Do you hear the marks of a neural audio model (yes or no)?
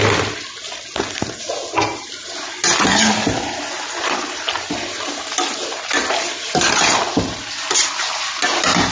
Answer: no